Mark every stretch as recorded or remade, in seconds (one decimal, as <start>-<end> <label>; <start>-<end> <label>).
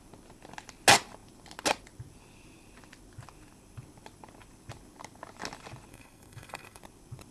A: 0.0-5.9 recorded; 5.9-6.8 remade; 6.8-7.3 recorded